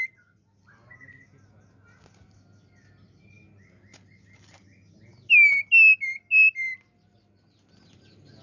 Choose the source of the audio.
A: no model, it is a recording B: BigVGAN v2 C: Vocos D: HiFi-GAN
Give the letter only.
A